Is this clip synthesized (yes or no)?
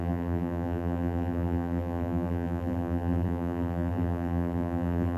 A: yes